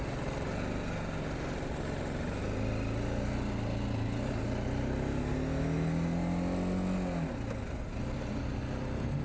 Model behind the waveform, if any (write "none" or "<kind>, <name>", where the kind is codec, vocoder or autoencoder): none